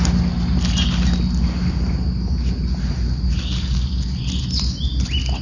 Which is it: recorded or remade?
recorded